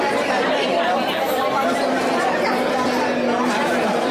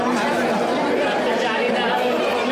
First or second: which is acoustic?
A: second